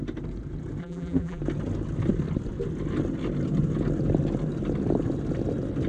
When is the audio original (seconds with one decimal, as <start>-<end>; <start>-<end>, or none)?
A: 0.0-0.8; 1.4-5.9